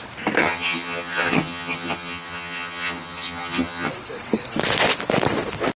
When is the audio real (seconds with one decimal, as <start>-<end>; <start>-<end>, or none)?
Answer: 0.0-0.4; 3.9-5.8